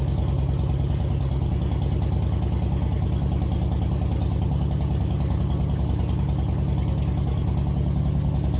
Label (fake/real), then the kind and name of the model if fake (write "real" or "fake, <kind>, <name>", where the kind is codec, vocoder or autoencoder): real